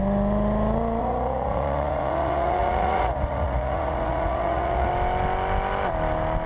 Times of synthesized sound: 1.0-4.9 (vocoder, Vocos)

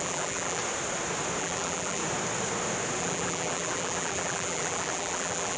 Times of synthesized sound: 0.0-0.6 (vocoder, BigVGAN v2); 1.4-2.0; 3.0-5.6

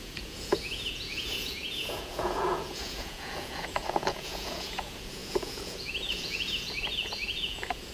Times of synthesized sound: 0.0-7.9 (vocoder, Vocos)

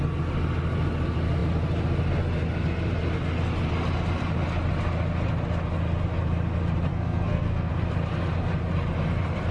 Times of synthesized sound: 6.9-7.7 (codec, SNAC)

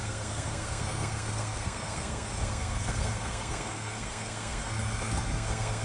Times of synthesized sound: 0.0-5.8 (codec, SNAC)

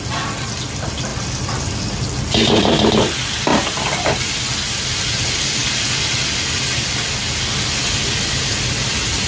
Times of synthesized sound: 1.1-2.9 (vocoder, BigVGAN v2); 3.5-4.2